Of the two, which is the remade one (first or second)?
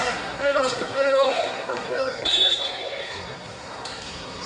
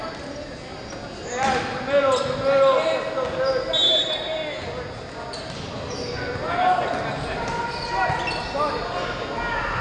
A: first